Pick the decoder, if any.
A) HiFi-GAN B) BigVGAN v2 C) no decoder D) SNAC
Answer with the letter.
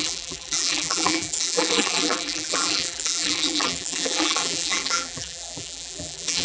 B